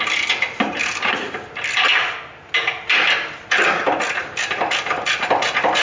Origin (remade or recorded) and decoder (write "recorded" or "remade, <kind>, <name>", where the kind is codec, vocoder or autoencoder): recorded